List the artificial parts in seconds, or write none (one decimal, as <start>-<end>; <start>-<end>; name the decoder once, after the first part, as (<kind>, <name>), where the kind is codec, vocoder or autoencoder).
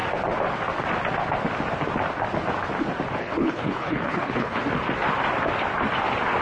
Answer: 3.2-4.6 (codec, HILCodec)